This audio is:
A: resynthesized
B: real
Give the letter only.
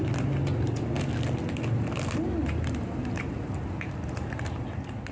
B